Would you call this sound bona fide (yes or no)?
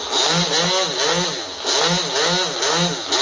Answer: yes